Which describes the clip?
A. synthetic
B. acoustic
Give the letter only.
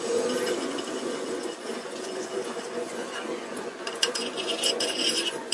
A